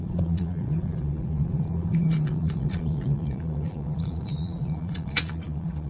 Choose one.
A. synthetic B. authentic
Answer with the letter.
A